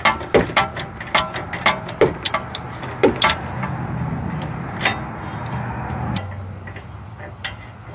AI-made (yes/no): no